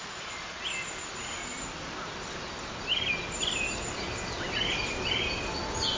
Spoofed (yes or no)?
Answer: no